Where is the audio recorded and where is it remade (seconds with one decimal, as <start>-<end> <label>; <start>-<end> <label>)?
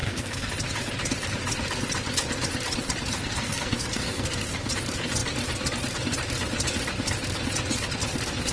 0.0-0.5 remade; 0.5-3.2 recorded; 3.2-4.7 remade; 4.7-8.5 recorded